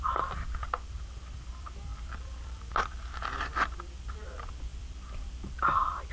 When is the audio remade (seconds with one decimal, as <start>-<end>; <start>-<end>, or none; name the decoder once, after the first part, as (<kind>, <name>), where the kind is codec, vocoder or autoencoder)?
0.0-6.1 (vocoder, BigVGAN v2)

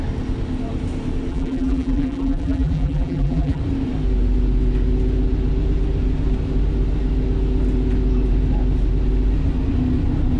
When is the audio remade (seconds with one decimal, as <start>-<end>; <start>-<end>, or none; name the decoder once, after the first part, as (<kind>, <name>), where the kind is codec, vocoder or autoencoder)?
1.3-3.6 (vocoder, BigVGAN v2)

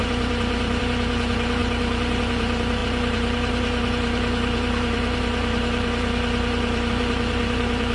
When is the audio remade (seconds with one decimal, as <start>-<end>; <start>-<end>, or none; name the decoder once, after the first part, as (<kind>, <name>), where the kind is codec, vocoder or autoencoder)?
0.0-7.9 (vocoder, BigVGAN v2)

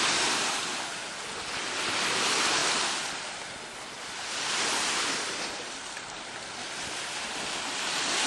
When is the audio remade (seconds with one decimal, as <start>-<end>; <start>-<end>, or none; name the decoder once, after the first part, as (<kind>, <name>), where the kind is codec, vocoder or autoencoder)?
none

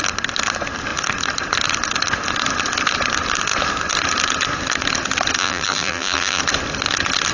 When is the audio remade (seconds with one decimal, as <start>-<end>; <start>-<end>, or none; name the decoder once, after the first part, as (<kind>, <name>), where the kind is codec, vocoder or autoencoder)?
5.4-6.4 (vocoder, BigVGAN v2)

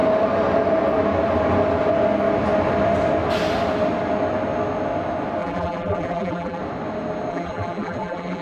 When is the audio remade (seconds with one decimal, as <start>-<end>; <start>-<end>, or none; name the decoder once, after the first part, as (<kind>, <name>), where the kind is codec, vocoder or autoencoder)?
5.4-6.6 (vocoder, BigVGAN v2); 7.3-8.4